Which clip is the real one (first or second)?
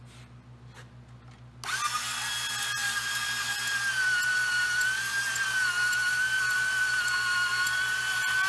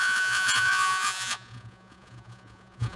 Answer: first